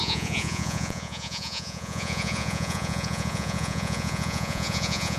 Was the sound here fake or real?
fake